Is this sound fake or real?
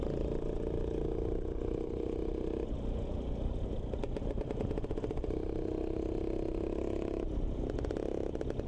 real